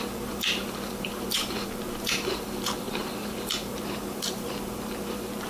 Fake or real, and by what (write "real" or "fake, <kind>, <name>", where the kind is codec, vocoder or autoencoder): fake, vocoder, BigVGAN v2